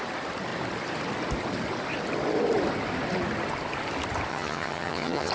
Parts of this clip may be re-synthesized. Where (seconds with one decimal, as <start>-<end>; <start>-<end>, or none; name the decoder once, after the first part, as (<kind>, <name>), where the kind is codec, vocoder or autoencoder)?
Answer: 4.3-5.3 (vocoder, HiFi-GAN)